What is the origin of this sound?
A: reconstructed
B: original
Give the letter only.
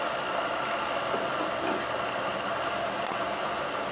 B